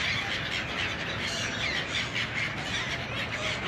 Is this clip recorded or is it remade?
recorded